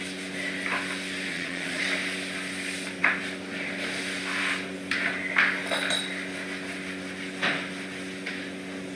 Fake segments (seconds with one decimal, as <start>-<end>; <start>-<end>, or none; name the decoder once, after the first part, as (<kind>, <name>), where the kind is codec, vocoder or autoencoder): 1.3-1.8 (vocoder, Vocos)